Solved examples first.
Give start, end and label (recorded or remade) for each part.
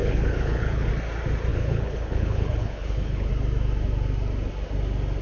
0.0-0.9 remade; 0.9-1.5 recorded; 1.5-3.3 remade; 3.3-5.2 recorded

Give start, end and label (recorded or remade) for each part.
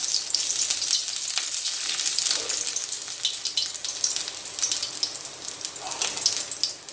0.0-6.9 recorded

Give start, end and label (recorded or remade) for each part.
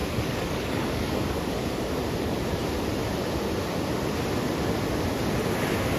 0.0-2.0 remade; 2.0-6.0 recorded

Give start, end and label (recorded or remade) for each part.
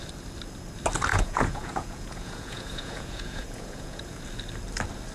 0.0-1.1 recorded; 1.1-4.2 remade; 4.2-5.1 recorded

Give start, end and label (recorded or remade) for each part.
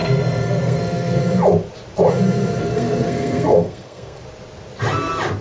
0.0-1.2 remade; 1.2-2.6 recorded; 2.6-4.2 remade; 4.2-5.4 recorded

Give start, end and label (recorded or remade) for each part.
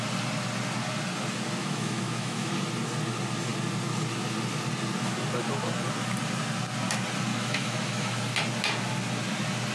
0.0-1.6 recorded; 1.6-2.5 remade; 2.5-7.3 recorded; 7.3-8.2 remade; 8.2-9.7 recorded